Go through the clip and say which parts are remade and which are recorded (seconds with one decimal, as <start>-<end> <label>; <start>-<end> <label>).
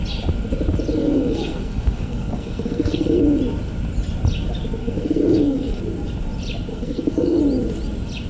0.0-1.0 recorded; 1.0-3.2 remade; 3.2-4.8 recorded; 4.8-5.8 remade; 5.8-6.7 recorded; 6.7-7.4 remade; 7.4-8.3 recorded